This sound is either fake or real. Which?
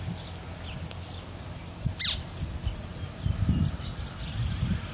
real